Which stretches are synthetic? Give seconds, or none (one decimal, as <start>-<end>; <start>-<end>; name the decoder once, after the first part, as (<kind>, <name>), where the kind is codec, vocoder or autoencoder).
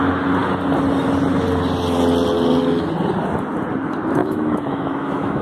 4.2-5.4 (autoencoder, DAC-VAE)